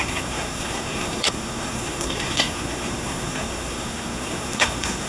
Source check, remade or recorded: remade